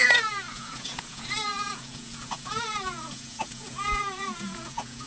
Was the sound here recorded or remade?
remade